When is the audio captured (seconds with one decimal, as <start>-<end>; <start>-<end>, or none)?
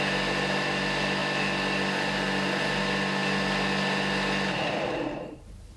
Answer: 0.0-5.8